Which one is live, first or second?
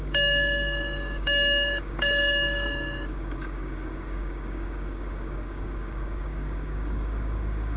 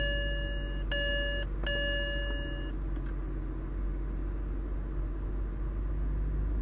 second